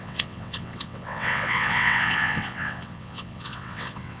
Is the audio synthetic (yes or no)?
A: yes